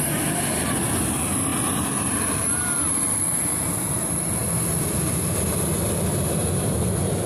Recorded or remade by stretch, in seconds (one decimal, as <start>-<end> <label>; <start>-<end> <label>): 0.0-7.3 recorded

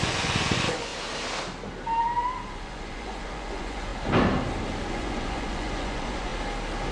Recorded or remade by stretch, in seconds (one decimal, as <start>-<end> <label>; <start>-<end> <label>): 0.0-0.9 remade; 0.9-2.5 recorded; 2.5-3.9 remade; 3.9-4.9 recorded; 4.9-6.3 remade; 6.3-6.9 recorded

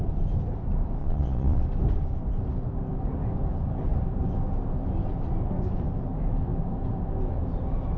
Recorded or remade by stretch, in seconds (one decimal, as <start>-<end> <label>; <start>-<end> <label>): 0.0-1.0 recorded; 1.0-1.6 remade; 1.6-8.0 recorded